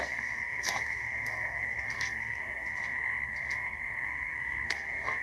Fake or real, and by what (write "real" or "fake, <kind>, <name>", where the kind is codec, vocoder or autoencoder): fake, codec, SNAC